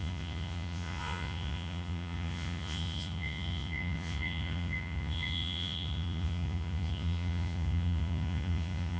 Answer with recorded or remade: remade